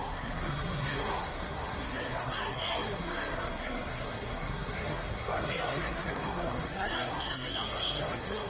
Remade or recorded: remade